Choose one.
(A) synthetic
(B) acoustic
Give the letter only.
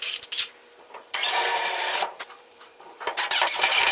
A